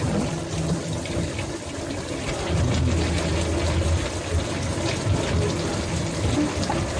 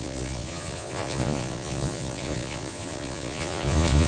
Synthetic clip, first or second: second